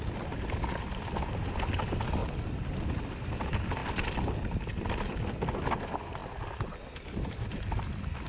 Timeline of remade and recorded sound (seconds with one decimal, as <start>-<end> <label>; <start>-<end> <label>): 0.0-8.3 recorded